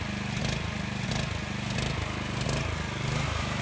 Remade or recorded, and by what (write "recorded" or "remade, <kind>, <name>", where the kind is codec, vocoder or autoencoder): recorded